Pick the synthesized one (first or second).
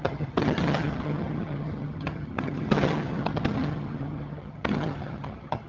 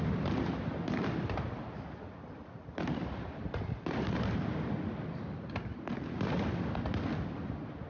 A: first